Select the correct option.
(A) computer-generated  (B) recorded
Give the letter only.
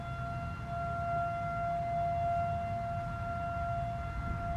B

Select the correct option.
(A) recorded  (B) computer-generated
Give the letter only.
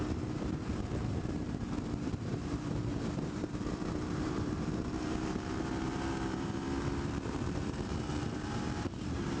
B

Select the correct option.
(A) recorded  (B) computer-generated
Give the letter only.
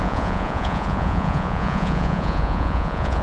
B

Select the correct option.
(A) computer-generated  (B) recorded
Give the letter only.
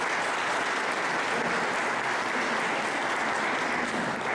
B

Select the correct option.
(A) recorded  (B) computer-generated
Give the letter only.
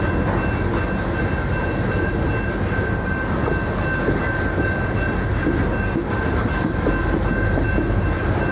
A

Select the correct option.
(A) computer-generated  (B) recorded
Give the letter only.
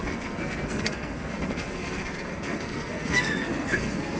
A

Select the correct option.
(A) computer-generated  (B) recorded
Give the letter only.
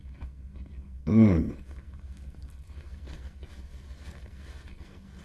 A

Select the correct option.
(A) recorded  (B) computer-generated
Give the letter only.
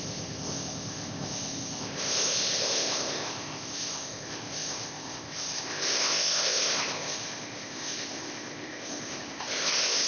B